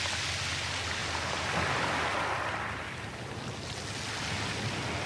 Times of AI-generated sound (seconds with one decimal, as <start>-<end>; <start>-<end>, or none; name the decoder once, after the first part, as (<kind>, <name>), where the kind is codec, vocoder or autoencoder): none